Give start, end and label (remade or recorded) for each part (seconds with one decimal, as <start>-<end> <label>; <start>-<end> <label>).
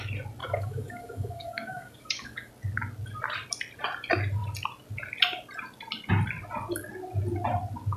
0.0-0.4 recorded; 0.4-2.5 remade; 2.5-8.0 recorded